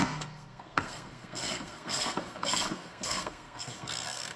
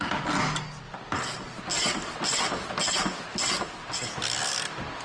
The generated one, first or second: first